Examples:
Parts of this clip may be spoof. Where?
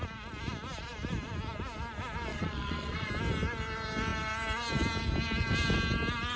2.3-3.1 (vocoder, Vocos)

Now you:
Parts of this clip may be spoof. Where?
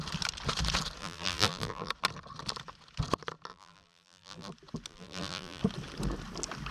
1.0-1.9 (vocoder, BigVGAN v2); 3.5-4.5; 4.9-5.6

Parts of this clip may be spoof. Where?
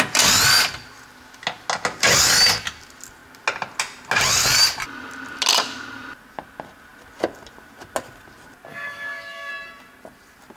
8.7-9.5 (codec, DAC)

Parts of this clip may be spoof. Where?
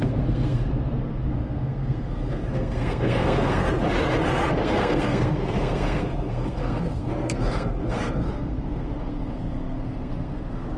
0.0-3.6 (codec, SNAC); 4.5-10.8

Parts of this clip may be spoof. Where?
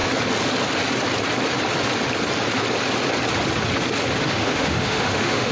4.2-5.5 (autoencoder, DAC-VAE)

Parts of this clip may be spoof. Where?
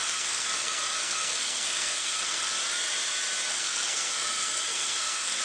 0.0-2.5 (codec, SNAC); 3.5-5.4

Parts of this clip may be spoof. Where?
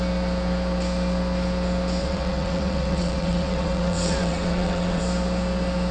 2.0-5.0 (vocoder, WaveNeXt)